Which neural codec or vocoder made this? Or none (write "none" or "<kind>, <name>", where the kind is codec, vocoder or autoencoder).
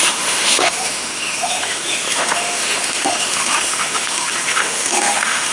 autoencoder, DAC-VAE